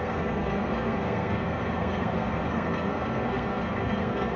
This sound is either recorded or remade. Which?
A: remade